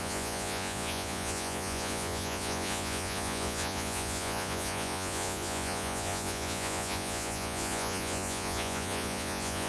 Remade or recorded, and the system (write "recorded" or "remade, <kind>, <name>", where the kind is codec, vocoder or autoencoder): remade, vocoder, Vocos